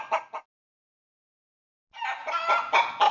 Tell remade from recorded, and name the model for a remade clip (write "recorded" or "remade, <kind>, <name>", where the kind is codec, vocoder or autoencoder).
recorded